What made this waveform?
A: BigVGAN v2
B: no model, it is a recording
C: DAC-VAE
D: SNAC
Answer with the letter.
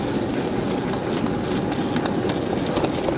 B